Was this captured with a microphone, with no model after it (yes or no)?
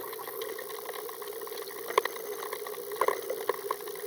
yes